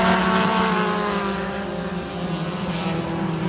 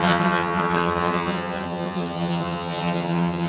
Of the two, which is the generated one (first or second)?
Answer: second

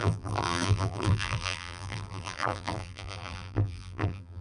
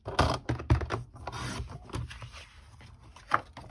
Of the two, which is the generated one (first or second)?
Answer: first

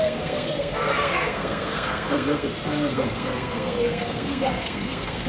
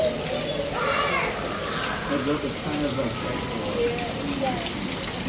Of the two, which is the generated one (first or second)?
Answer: first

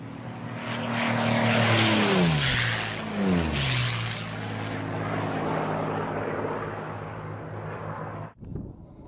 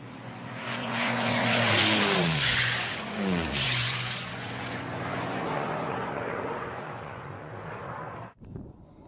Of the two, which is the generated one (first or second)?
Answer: second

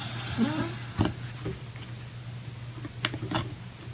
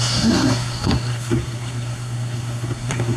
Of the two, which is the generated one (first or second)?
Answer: second